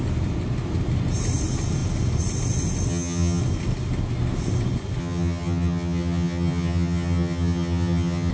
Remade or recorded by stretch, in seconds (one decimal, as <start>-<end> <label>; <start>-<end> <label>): 0.0-2.9 recorded; 2.9-3.4 remade; 3.4-5.0 recorded; 5.0-8.3 remade